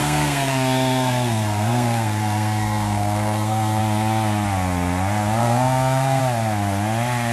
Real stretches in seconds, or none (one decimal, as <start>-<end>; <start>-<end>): 3.8-5.4; 6.2-7.3